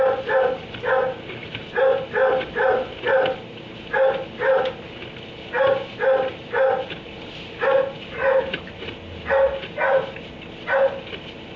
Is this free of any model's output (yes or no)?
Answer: yes